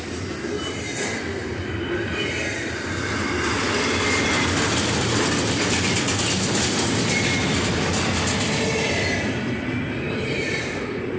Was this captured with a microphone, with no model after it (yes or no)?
yes